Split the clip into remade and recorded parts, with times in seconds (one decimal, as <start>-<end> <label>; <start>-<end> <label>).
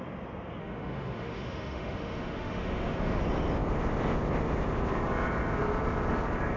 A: 0.0-0.6 recorded; 0.6-3.2 remade; 3.2-6.6 recorded